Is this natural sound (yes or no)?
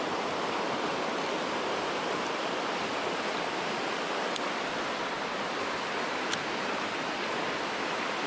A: yes